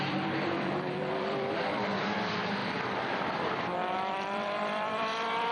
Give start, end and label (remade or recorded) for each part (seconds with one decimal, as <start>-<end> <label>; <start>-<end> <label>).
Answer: 0.0-5.5 remade